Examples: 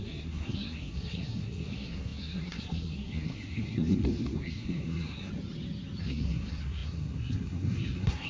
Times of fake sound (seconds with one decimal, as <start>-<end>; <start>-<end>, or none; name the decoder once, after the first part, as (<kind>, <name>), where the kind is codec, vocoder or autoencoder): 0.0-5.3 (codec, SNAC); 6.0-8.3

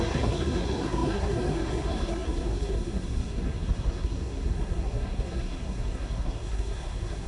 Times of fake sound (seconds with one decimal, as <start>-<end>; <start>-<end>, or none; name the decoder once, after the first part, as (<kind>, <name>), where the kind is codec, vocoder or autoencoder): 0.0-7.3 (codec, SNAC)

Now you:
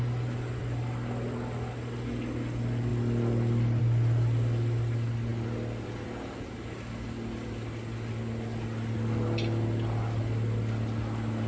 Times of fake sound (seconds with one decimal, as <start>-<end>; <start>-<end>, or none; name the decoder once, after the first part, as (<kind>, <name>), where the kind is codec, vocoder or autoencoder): none

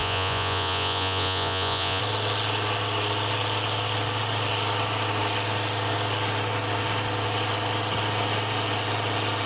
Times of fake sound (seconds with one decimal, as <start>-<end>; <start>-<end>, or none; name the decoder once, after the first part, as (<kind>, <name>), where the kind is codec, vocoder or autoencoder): 0.0-2.0 (vocoder, Vocos)